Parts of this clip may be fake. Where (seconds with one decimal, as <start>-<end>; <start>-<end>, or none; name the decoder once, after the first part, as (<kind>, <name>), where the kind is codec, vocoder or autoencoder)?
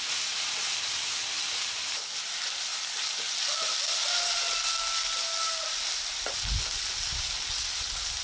none